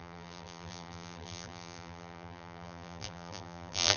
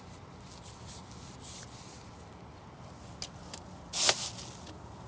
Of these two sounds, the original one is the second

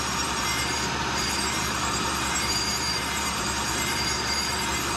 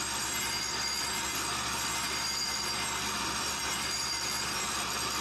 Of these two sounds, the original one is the second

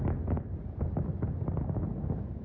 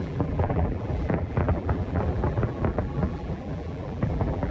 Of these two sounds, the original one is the first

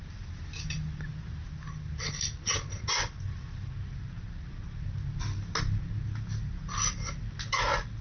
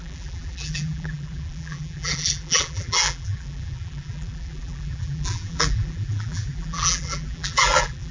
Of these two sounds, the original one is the first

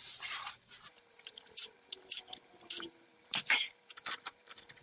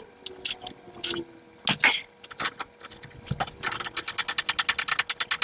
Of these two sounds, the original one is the second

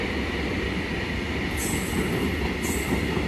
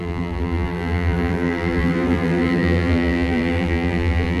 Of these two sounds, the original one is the first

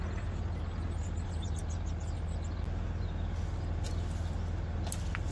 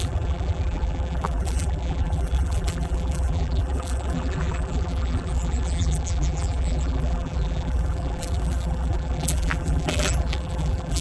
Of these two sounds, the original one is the first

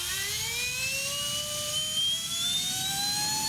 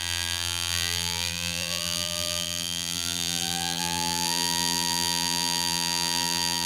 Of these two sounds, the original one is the first